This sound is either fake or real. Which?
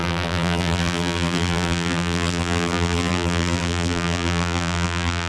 fake